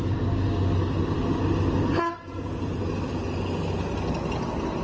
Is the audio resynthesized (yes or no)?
no